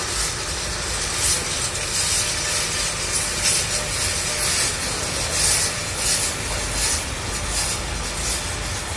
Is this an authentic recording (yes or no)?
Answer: yes